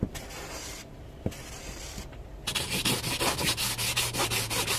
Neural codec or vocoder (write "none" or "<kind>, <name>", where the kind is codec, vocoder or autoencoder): none